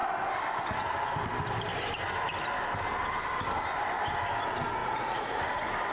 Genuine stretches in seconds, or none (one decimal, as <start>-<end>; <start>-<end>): 0.0-4.8; 5.4-5.9